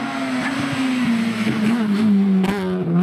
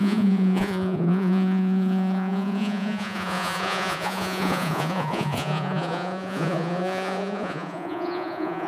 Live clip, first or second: first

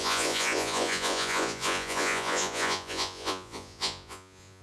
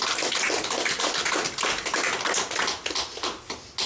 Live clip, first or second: second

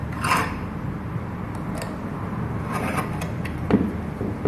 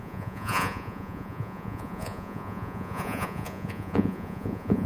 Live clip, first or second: first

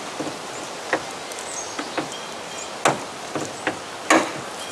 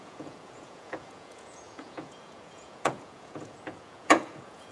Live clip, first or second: first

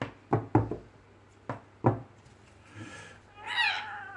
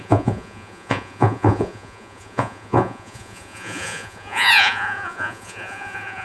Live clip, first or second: first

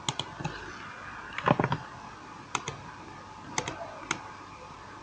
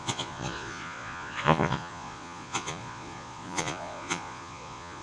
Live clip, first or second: first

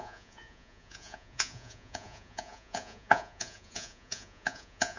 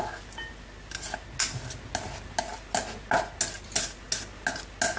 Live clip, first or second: second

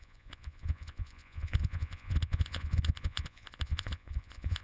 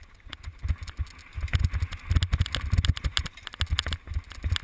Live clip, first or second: second